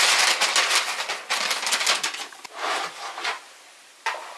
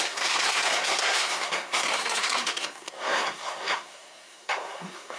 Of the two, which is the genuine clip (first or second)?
first